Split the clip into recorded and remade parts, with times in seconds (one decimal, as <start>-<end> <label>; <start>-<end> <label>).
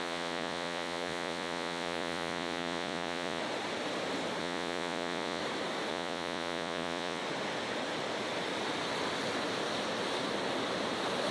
0.0-3.4 remade; 3.4-4.4 recorded; 4.4-5.4 remade; 5.4-5.9 recorded; 5.9-7.2 remade; 7.2-11.3 recorded